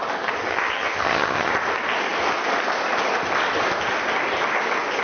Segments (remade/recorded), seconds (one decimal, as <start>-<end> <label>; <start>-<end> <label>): 0.0-0.5 recorded; 0.5-1.5 remade; 1.5-5.0 recorded